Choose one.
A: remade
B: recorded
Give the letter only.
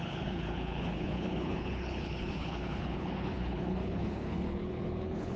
A